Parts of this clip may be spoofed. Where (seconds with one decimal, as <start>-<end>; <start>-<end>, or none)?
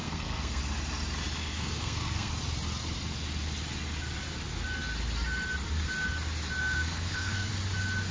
0.0-0.6; 1.4-2.3; 6.6-7.5